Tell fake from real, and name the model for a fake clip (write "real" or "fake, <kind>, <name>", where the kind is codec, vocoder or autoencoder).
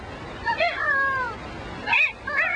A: real